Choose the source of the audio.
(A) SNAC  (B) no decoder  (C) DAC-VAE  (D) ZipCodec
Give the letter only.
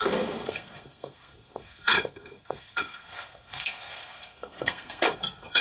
A